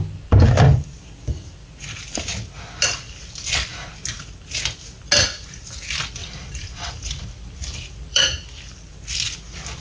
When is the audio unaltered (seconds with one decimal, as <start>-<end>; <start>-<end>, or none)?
0.0-6.2; 8.2-9.8

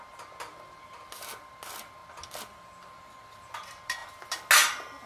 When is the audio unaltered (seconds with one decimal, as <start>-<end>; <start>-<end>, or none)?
0.0-5.1

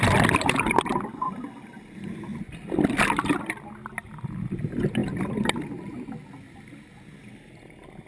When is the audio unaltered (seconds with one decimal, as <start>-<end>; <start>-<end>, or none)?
0.0-2.3; 3.4-5.0; 5.8-8.1

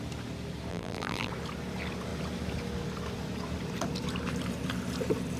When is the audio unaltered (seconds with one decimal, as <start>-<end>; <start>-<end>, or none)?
0.0-0.7; 1.3-5.4

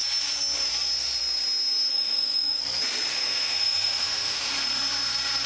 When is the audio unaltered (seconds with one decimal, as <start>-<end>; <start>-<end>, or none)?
0.0-1.9; 2.6-3.1; 4.5-5.5

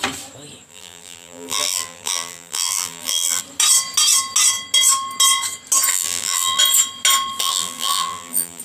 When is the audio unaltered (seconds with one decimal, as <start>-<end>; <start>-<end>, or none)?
0.0-0.7; 3.4-5.9; 6.6-7.4